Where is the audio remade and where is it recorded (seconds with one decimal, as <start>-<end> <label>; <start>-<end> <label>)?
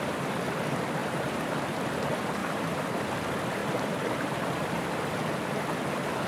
0.0-1.0 recorded; 1.0-1.8 remade; 1.8-2.4 recorded; 2.4-3.0 remade; 3.0-3.6 recorded; 3.6-4.9 remade; 4.9-6.3 recorded